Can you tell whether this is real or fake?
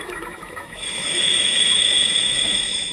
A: fake